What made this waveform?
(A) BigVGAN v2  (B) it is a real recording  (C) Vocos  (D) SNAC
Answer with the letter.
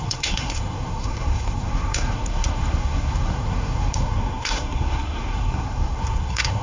D